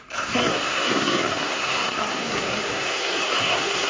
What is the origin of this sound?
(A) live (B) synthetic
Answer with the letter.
B